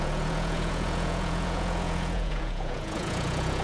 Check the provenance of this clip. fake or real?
fake